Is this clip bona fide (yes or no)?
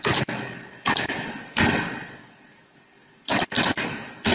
yes